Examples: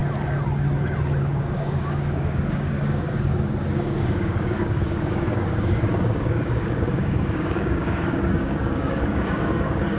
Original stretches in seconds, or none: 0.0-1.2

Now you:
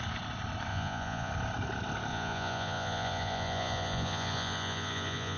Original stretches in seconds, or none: 0.0-0.7; 1.3-2.1

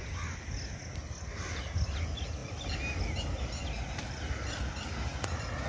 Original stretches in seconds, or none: 0.0-5.7

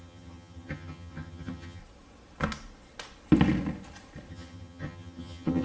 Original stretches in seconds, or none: 1.8-4.3

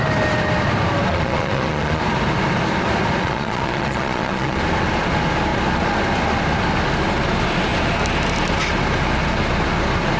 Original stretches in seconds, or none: 0.0-1.1; 2.0-3.2; 4.6-10.2

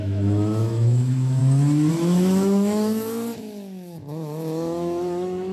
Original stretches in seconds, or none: 1.4-1.9